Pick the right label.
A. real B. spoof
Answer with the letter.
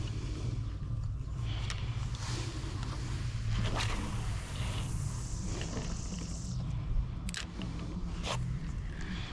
A